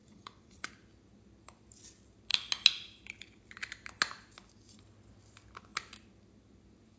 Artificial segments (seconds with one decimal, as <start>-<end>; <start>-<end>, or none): 0.0-0.7